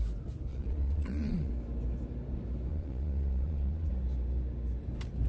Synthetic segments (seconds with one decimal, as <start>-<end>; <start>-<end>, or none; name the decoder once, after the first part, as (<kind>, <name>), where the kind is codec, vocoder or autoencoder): 0.5-1.5 (vocoder, Vocos); 2.7-3.9